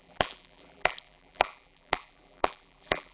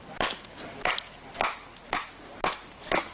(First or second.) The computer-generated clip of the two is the first